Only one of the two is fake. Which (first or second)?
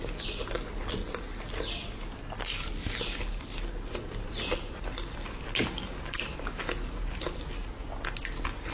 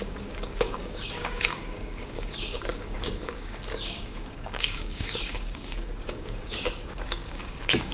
second